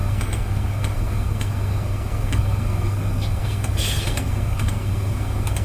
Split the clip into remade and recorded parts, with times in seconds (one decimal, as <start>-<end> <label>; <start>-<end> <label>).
0.0-5.6 remade